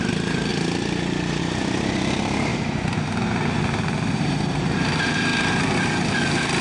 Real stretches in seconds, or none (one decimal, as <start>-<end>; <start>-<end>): 0.5-1.4; 2.5-4.1; 5.3-6.6